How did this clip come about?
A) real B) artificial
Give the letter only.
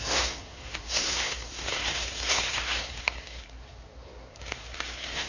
B